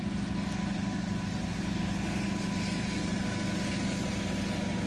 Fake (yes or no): no